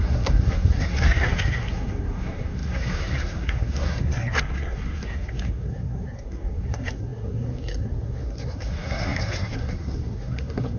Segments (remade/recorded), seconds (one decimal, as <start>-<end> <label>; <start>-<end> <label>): 0.0-10.8 remade